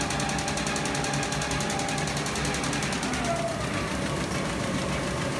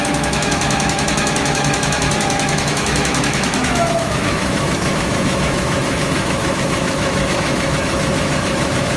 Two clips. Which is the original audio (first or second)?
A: first